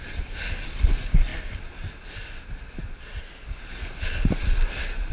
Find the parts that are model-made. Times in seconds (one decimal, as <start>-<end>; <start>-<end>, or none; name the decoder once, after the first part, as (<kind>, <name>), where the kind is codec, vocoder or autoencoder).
none